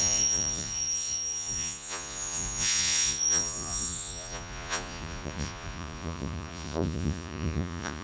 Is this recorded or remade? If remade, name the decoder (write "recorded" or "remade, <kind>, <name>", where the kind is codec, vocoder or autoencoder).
remade, vocoder, Vocos